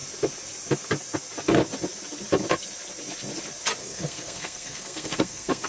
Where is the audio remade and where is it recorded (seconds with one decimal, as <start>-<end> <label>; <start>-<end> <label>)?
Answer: 0.0-3.8 recorded; 3.8-5.7 remade